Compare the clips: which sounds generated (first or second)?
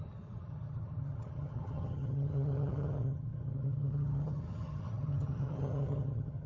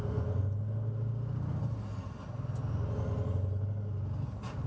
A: first